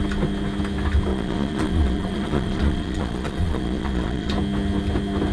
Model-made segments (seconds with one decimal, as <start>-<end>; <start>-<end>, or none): 1.1-4.3